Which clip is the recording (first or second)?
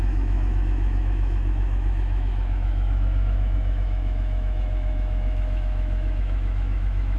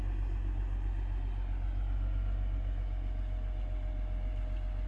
second